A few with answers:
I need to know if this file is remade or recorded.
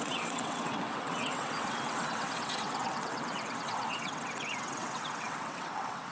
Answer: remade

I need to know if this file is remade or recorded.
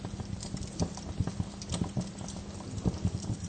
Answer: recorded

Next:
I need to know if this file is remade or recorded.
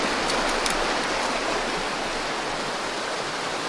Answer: recorded